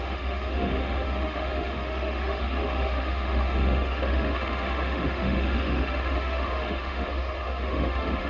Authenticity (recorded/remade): remade